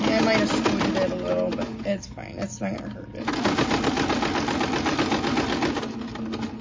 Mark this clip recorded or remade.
recorded